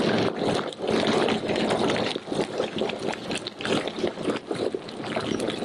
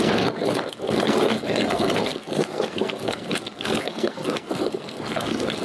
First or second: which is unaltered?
first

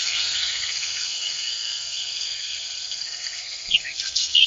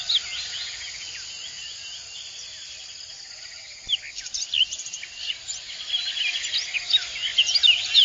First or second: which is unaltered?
second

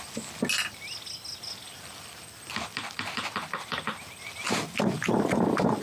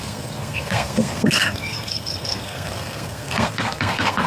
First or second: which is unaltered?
first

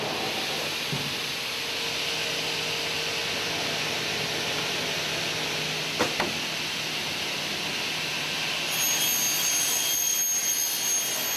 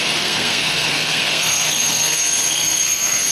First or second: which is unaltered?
first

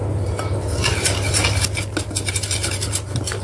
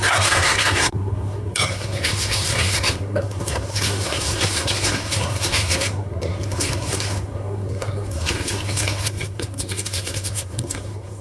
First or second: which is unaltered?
first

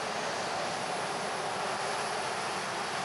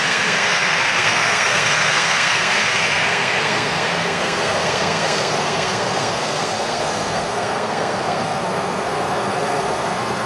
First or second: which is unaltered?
first